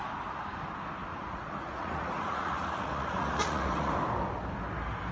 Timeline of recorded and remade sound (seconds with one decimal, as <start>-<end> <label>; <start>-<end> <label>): 0.0-1.1 recorded; 1.1-3.9 remade; 3.9-5.1 recorded